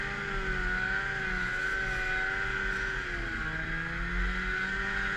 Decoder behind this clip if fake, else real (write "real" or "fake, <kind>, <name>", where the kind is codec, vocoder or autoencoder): real